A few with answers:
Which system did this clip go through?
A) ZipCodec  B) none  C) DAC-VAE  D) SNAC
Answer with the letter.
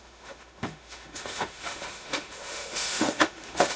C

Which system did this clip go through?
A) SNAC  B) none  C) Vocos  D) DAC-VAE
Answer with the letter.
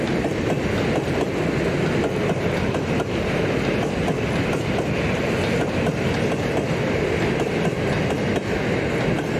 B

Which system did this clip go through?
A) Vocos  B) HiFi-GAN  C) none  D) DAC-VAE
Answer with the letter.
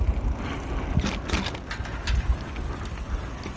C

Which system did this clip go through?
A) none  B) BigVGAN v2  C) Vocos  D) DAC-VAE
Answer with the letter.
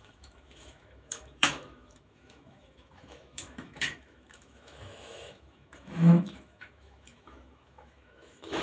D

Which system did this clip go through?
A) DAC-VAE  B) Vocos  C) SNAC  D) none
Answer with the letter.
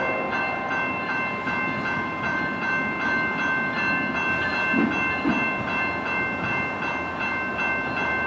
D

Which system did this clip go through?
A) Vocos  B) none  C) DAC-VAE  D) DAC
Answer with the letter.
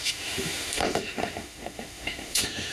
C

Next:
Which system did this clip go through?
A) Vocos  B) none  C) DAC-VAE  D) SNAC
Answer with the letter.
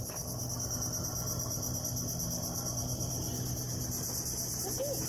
B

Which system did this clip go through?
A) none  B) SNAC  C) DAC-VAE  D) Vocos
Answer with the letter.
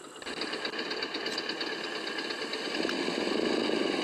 A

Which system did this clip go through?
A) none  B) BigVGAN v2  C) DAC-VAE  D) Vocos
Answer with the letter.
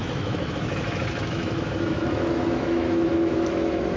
C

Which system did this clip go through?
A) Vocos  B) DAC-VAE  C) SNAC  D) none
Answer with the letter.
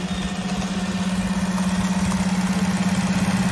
D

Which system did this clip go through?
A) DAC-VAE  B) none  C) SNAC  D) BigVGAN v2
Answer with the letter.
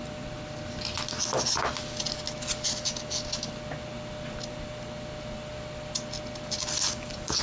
B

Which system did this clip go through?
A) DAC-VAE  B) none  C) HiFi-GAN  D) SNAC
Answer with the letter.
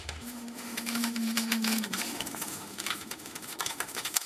A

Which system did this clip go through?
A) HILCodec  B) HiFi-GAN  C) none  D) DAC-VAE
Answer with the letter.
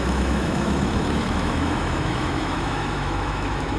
D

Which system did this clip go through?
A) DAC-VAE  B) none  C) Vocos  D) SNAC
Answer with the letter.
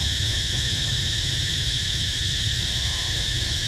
A